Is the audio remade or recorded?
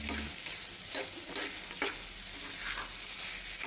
recorded